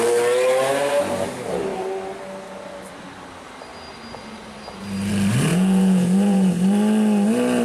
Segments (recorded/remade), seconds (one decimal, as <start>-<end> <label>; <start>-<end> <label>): 0.0-5.5 recorded; 5.5-6.5 remade; 6.5-7.6 recorded